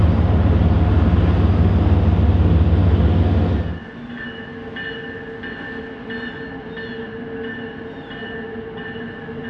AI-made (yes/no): no